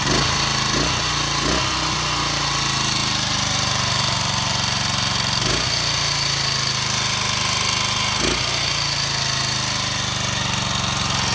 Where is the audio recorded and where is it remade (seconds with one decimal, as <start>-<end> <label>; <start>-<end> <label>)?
0.0-3.0 recorded; 3.0-5.5 remade; 5.5-11.3 recorded